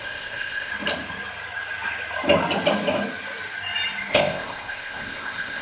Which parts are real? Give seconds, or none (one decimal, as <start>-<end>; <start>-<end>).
0.7-4.1